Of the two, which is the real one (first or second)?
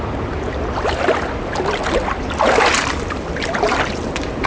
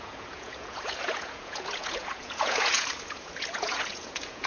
first